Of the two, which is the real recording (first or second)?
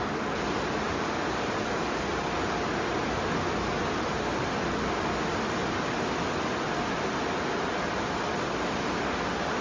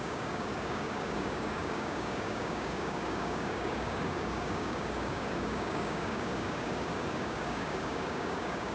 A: first